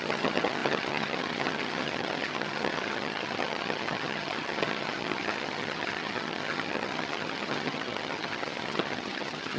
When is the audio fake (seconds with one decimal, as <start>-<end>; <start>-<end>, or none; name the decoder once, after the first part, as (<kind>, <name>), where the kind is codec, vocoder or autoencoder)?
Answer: 0.0-9.6 (vocoder, HiFi-GAN)

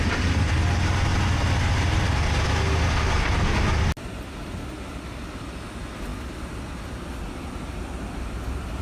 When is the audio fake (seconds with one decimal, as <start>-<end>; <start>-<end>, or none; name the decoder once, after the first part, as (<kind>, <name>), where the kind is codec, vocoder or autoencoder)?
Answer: none

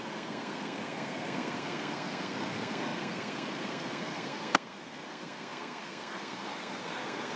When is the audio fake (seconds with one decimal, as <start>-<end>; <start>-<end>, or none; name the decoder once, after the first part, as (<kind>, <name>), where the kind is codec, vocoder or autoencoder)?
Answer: 0.0-7.4 (codec, SNAC)

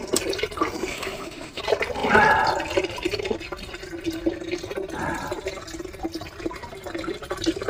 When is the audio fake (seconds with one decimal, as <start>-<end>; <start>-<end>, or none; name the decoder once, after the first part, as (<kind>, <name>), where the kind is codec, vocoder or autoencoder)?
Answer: 0.9-1.6 (autoencoder, DAC-VAE)

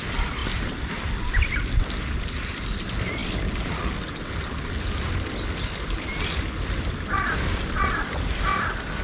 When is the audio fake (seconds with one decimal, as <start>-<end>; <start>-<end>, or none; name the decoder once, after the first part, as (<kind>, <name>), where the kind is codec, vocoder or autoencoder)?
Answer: none